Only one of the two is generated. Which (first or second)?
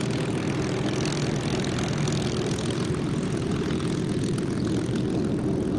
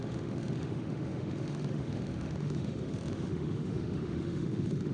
second